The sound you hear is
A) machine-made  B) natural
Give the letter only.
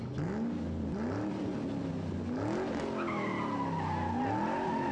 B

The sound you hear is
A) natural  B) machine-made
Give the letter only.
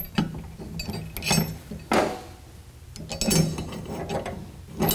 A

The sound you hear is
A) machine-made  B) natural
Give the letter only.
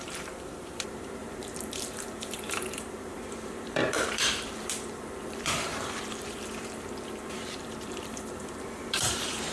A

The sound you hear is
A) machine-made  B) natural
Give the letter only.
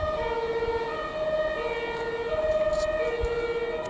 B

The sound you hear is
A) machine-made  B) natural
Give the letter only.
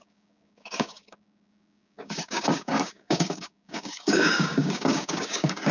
A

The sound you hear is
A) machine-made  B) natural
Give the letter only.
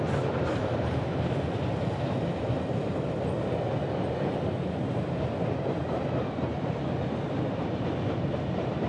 B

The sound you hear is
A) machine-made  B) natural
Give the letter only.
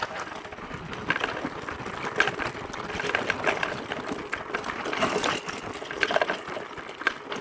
B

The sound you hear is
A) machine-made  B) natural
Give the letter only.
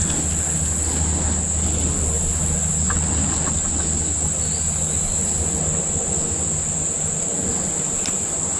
B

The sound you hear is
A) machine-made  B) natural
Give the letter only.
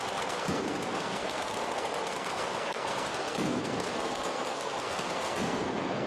A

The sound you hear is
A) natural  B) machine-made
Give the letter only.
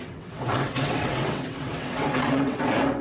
B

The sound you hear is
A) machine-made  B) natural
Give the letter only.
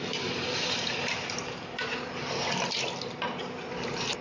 B